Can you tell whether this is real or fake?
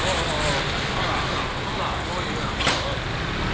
real